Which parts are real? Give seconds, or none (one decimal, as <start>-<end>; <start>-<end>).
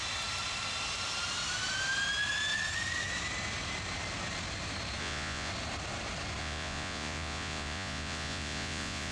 0.0-5.0; 5.5-6.4